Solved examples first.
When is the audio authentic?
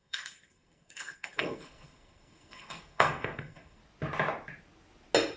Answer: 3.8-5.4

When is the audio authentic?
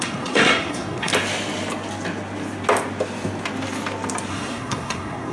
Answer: 1.1-4.3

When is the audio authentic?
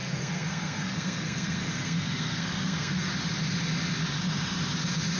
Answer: 3.1-5.2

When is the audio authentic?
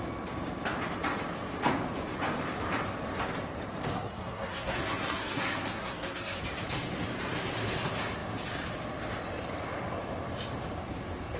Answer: 0.0-3.9; 6.4-11.4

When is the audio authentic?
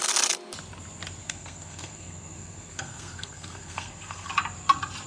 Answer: 0.0-1.2; 4.3-5.1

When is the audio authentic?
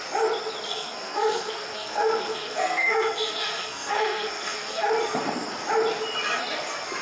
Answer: 0.0-0.7; 4.9-7.0